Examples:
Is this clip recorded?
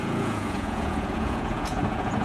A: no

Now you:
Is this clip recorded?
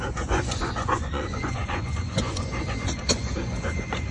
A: no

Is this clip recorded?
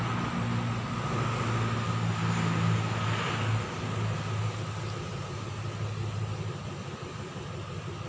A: yes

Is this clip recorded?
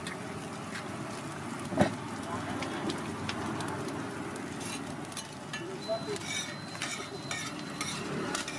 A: yes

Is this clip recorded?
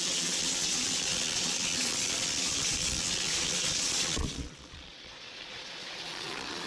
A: no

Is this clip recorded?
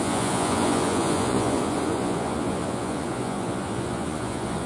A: no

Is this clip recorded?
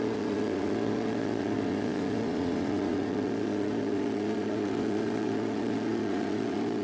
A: no